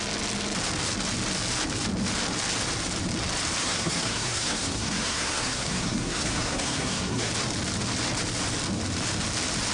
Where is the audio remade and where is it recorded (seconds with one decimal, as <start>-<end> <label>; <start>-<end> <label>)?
0.0-3.6 recorded; 3.6-7.3 remade; 7.3-9.7 recorded